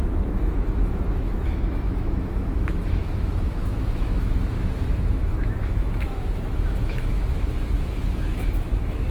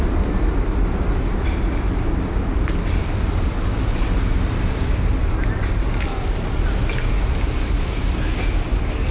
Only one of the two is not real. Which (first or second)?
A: first